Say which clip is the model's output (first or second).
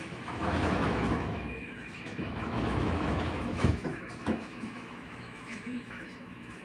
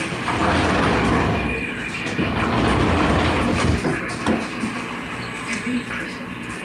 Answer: first